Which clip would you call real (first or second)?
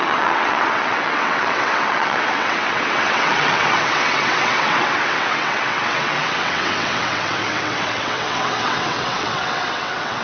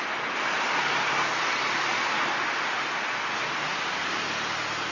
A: second